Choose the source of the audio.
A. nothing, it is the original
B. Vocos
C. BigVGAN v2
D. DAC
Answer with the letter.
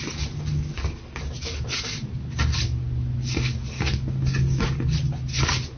A